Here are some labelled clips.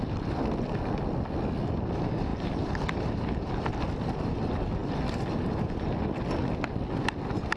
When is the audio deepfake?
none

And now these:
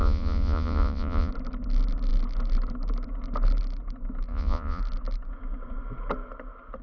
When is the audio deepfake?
0.0-1.3 (vocoder, Vocos); 4.3-4.8

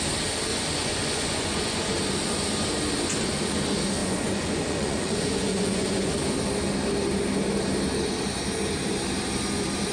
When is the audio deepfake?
0.5-1.9 (vocoder, Vocos); 4.0-6.1

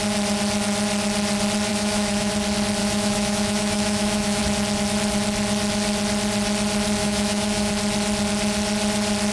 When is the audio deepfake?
1.7-2.3 (autoencoder, DAC-VAE); 2.8-4.4; 7.0-7.7

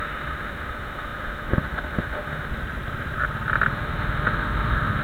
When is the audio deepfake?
0.0-2.5 (autoencoder, DAC-VAE); 3.7-5.0

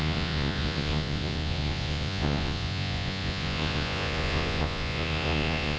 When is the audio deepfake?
0.0-5.8 (vocoder, Vocos)